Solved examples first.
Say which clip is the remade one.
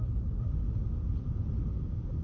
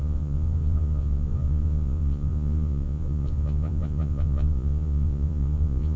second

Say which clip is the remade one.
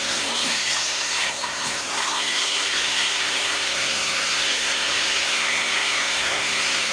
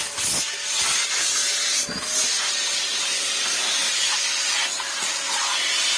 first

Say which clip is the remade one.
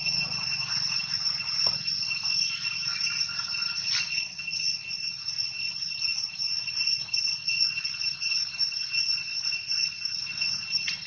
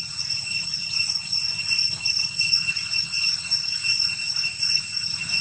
second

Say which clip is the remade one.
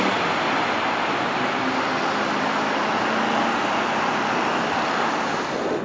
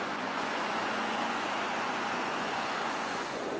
second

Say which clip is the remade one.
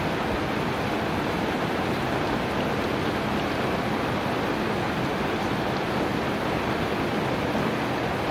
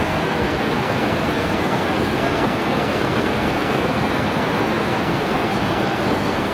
second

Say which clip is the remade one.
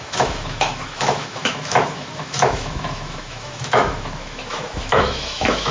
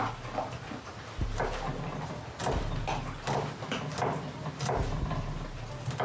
first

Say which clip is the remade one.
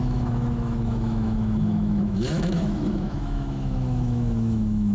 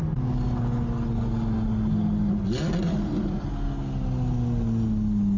first